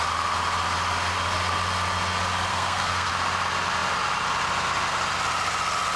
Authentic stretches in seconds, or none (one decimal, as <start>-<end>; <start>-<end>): 0.0-2.5; 3.1-6.0